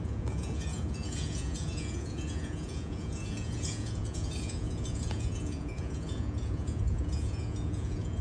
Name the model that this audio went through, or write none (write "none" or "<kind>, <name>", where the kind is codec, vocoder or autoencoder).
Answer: vocoder, Vocos